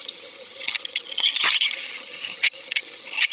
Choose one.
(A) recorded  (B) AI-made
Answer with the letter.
B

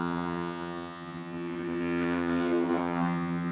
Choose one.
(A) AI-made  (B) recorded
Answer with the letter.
A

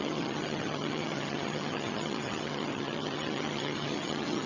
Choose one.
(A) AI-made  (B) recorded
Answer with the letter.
A